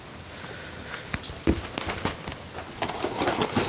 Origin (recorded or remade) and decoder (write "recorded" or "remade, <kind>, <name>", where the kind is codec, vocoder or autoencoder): recorded